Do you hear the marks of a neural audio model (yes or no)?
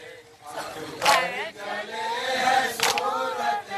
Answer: no